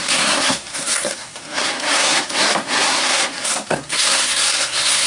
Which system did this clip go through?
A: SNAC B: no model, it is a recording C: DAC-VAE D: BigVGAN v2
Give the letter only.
A